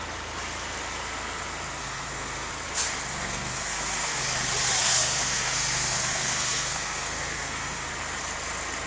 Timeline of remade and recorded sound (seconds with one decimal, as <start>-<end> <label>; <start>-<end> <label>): 0.0-1.8 recorded; 1.8-2.5 remade; 2.5-3.1 recorded; 3.1-4.2 remade; 4.2-4.8 recorded; 4.8-7.9 remade; 7.9-8.9 recorded